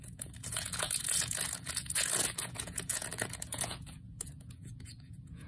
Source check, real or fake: fake